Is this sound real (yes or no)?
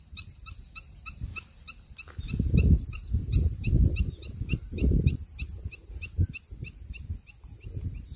yes